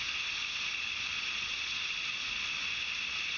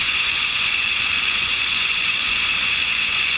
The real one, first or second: first